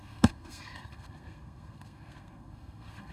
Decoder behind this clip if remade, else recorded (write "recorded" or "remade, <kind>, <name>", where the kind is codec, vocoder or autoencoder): remade, codec, SNAC